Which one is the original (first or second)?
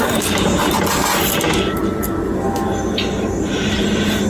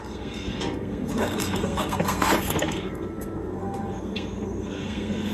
first